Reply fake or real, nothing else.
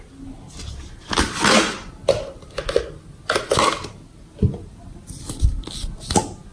real